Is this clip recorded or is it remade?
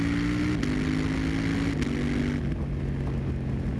recorded